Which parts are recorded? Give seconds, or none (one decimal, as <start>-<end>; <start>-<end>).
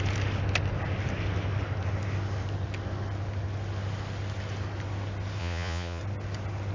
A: 0.0-5.4; 6.0-6.7